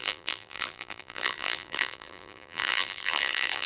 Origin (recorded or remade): remade